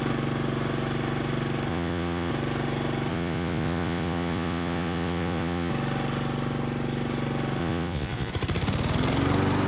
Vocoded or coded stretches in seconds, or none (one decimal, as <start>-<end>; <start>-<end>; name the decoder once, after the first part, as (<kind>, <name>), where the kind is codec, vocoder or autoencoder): 1.7-2.3 (vocoder, Vocos); 3.1-5.7; 7.6-8.3